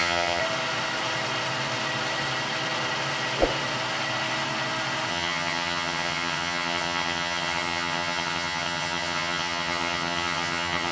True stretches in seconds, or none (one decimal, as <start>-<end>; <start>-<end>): 0.4-5.1